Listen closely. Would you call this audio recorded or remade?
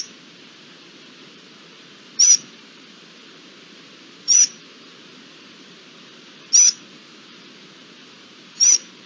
remade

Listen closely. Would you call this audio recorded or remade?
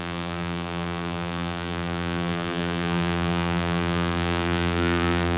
remade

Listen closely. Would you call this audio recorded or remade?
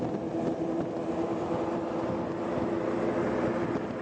recorded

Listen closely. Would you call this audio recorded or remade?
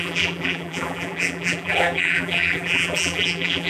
remade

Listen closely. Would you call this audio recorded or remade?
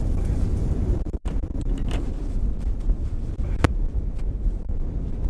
remade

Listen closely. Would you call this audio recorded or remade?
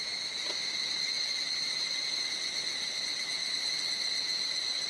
recorded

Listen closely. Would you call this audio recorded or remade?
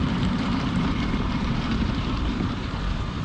remade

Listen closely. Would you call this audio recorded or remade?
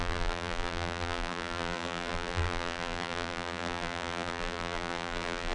remade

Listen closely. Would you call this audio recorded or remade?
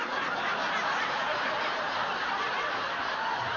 remade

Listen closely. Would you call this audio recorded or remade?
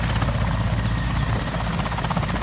recorded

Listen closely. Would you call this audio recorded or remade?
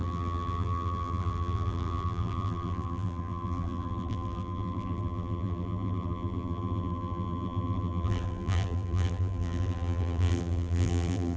remade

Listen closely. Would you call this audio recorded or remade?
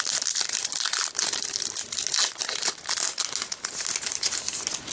recorded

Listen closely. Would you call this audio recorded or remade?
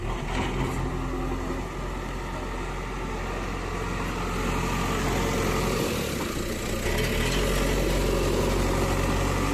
recorded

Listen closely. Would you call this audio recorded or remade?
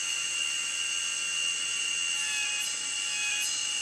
recorded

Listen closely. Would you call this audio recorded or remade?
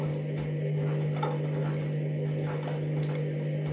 recorded